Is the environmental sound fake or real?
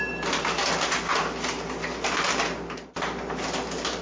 real